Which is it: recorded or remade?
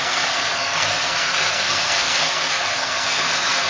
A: remade